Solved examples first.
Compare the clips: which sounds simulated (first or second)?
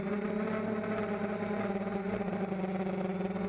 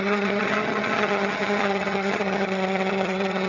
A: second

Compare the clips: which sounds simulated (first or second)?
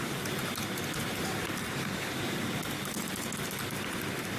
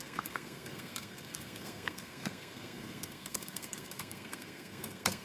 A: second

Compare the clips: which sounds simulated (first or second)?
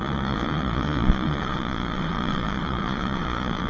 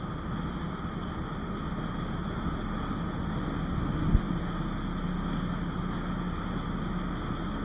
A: first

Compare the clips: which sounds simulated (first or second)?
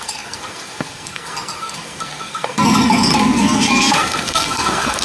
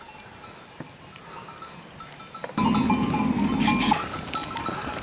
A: first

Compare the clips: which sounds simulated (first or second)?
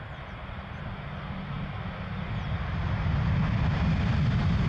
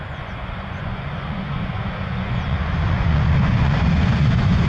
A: second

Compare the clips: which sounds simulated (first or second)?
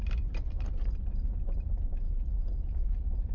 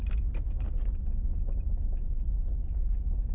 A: first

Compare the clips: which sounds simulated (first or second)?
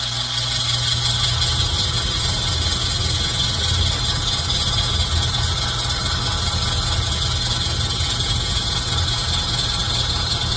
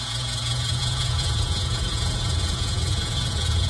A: second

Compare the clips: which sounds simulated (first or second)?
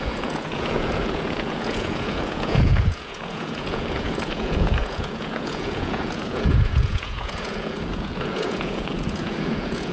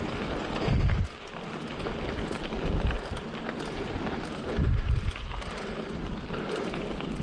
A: first